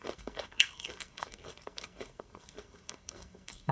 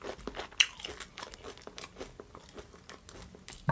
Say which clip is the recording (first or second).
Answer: second